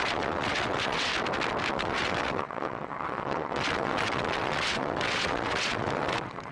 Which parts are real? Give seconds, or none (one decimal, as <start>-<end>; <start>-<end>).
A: 1.1-1.7